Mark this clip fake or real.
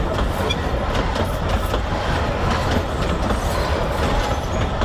real